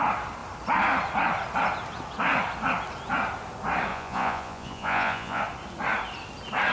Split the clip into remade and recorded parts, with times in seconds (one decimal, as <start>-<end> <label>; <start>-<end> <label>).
0.0-3.9 recorded; 3.9-5.4 remade; 5.4-6.7 recorded